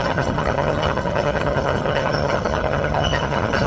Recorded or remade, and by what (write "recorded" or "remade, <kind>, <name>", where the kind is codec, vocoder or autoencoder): remade, vocoder, HiFi-GAN